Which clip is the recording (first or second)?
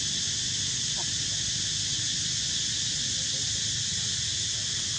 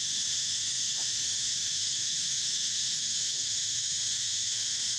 first